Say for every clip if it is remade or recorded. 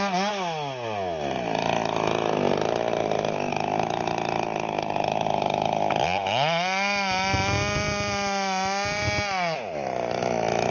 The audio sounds recorded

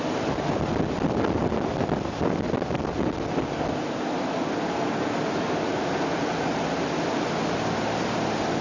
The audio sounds recorded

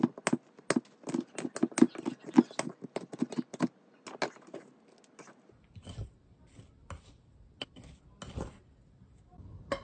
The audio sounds recorded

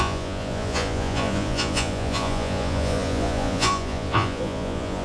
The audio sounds remade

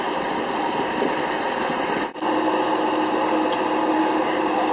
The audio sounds recorded